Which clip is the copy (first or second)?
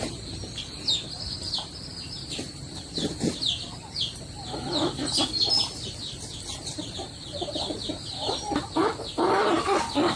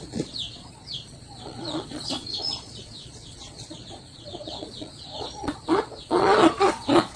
second